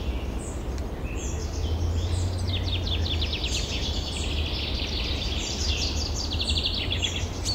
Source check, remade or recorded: recorded